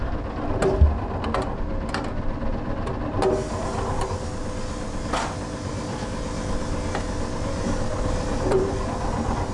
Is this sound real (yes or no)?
yes